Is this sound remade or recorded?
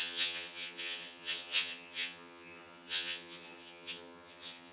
remade